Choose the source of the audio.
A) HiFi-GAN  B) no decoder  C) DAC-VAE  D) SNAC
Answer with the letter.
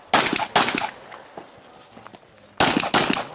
B